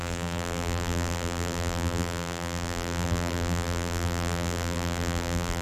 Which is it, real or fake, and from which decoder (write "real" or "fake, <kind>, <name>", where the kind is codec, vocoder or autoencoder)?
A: fake, vocoder, BigVGAN v2